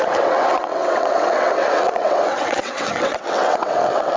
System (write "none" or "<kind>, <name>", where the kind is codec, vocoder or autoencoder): vocoder, WaveNeXt